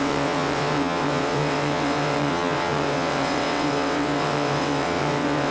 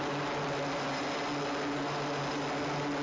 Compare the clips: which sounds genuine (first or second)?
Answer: second